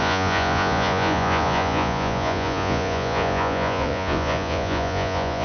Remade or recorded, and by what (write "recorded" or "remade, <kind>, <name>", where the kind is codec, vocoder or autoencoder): remade, vocoder, Vocos